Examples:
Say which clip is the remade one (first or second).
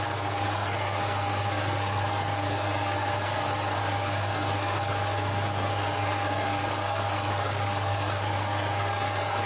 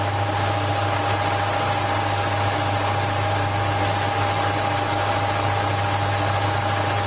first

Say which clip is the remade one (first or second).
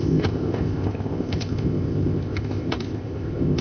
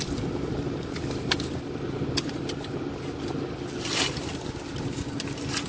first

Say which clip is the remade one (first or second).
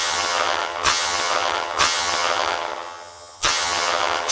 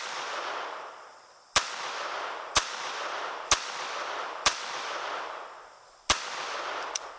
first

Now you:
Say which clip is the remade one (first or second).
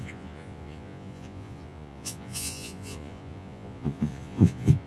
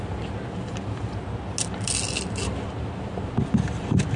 first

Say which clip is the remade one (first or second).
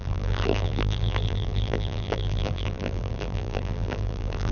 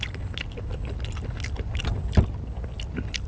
first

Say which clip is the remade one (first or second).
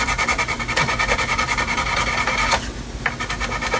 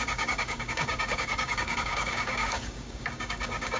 second